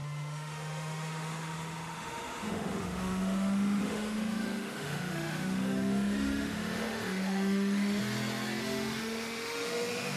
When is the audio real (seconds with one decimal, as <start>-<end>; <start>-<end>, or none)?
8.0-8.6